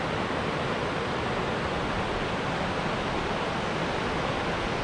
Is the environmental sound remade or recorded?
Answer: recorded